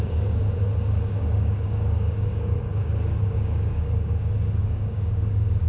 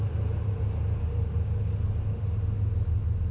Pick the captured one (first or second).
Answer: second